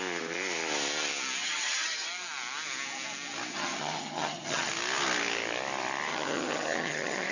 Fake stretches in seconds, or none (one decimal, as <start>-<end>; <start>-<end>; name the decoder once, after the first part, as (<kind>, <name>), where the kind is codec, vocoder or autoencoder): 1.4-2.1 (vocoder, HiFi-GAN); 3.5-4.7; 6.1-7.3